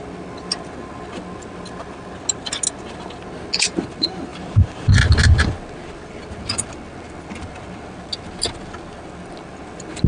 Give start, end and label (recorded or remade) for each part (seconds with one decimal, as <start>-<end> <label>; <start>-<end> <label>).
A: 0.0-10.1 recorded